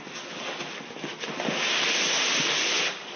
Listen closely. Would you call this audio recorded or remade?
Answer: recorded